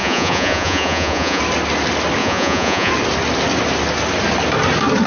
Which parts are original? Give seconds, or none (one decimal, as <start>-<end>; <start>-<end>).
1.4-2.2; 2.9-5.1